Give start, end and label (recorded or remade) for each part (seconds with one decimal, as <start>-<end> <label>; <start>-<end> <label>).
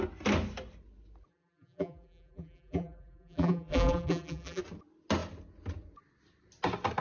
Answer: 0.0-1.3 recorded; 1.3-4.6 remade; 4.6-7.0 recorded